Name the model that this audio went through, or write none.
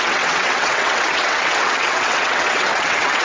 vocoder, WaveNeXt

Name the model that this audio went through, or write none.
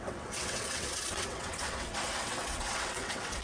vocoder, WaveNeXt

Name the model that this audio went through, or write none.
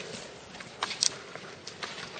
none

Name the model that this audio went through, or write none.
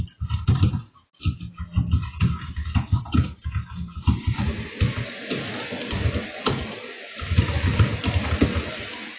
none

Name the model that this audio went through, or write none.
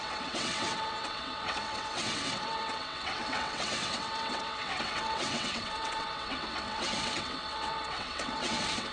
vocoder, WaveNeXt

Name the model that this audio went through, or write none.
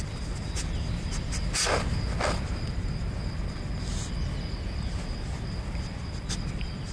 none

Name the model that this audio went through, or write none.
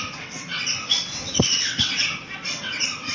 vocoder, WaveNeXt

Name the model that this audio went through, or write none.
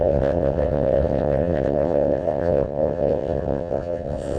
vocoder, WaveNeXt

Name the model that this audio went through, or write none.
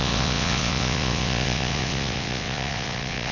vocoder, WaveNeXt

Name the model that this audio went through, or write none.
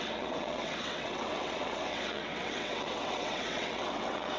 vocoder, WaveNeXt